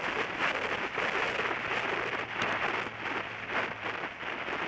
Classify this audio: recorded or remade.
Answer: recorded